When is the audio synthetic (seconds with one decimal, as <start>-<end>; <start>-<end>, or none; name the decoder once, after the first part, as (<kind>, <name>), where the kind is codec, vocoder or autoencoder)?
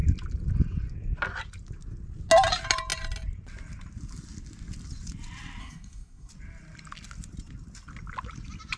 5.6-6.3 (codec, SNAC)